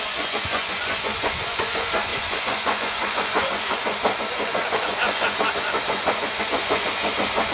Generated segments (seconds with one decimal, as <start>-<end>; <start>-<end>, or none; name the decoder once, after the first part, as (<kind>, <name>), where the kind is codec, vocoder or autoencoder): 0.0-7.5 (vocoder, Vocos)